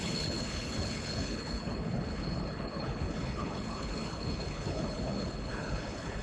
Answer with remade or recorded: remade